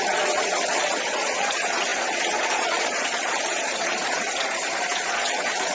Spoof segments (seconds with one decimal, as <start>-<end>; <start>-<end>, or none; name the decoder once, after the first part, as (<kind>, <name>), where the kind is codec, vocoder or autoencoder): 0.0-5.7 (vocoder, Vocos)